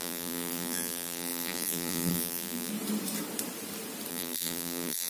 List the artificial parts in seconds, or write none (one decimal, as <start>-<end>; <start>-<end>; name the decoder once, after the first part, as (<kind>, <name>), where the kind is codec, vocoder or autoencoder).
0.0-2.7 (vocoder, BigVGAN v2); 4.1-5.1